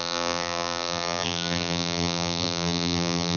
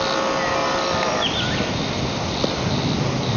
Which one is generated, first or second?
first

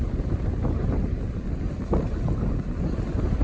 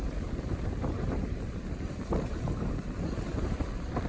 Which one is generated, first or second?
second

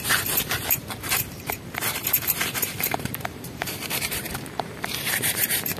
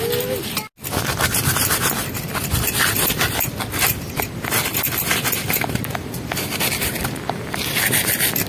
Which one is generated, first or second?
first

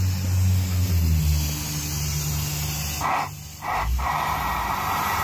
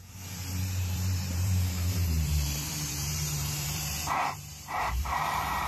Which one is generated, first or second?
second